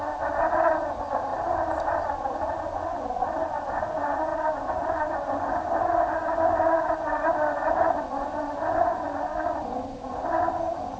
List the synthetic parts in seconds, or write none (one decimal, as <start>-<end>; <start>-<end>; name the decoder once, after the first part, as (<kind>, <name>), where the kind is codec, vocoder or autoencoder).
none